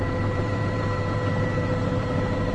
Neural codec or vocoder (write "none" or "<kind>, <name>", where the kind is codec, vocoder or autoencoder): vocoder, BigVGAN v2